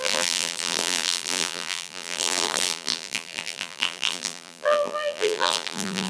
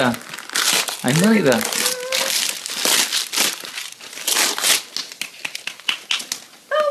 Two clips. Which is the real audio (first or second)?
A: second